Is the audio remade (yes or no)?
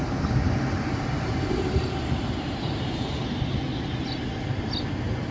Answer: no